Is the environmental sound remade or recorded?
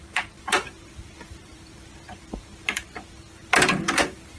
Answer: remade